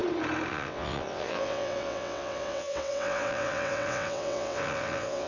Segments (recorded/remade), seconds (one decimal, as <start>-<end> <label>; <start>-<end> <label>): 0.0-0.5 recorded; 0.5-5.3 remade